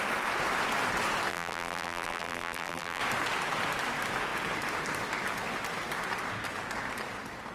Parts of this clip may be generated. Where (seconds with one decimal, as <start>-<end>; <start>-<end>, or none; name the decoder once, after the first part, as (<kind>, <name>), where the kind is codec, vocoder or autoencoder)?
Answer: 1.3-3.0 (vocoder, BigVGAN v2)